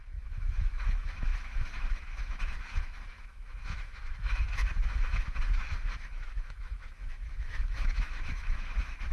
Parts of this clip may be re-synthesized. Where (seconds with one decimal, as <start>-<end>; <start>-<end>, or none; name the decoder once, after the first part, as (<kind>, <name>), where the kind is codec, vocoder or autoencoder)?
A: 0.0-9.1 (autoencoder, DAC-VAE)